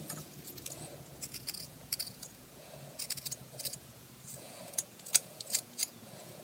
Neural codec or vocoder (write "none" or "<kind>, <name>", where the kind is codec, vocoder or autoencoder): vocoder, Vocos